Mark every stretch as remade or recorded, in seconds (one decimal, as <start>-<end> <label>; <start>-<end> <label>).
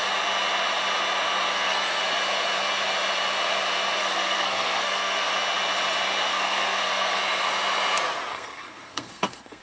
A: 0.0-1.5 recorded; 1.5-2.0 remade; 2.0-4.0 recorded; 4.0-5.3 remade; 5.3-6.3 recorded; 6.3-7.2 remade; 7.2-8.3 recorded; 8.3-9.6 remade